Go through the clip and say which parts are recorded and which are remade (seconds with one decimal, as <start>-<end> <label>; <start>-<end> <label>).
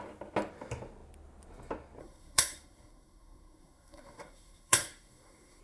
0.0-2.0 recorded; 2.0-5.6 remade